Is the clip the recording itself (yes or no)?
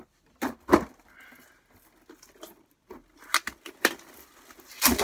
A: yes